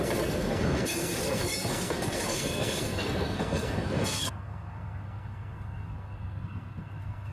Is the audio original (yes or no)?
no